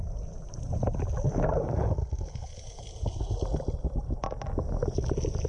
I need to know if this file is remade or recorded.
recorded